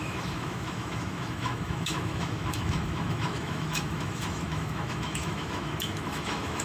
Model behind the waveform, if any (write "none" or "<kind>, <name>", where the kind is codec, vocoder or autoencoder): autoencoder, DAC-VAE